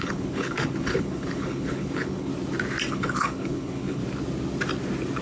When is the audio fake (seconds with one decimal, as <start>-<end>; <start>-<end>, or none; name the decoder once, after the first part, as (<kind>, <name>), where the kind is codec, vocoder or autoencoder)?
0.0-2.3 (codec, HILCodec); 2.9-4.0